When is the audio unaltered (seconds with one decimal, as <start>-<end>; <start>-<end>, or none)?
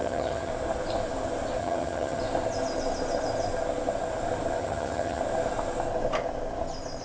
0.5-1.6; 2.2-4.6; 5.2-7.0